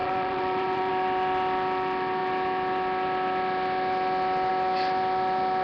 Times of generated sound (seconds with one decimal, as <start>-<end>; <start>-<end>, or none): 0.0-0.9